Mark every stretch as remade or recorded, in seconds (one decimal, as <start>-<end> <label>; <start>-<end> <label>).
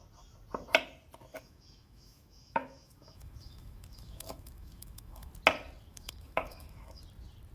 0.0-1.3 recorded; 1.3-5.3 remade; 5.3-5.9 recorded; 5.9-7.0 remade; 7.0-7.5 recorded